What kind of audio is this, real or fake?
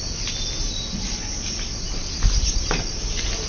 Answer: real